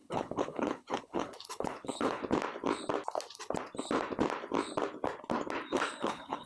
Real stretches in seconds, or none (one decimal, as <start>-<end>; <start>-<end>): 2.2-6.0